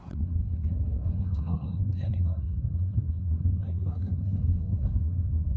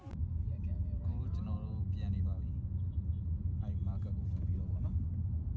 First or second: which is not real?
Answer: first